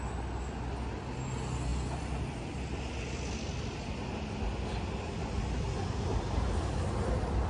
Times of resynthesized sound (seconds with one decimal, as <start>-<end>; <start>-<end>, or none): none